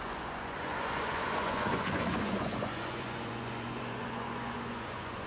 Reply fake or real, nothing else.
fake